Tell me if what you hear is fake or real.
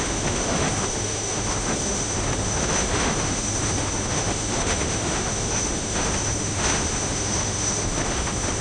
fake